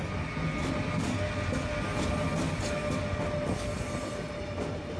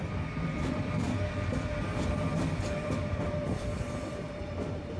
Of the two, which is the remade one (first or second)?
second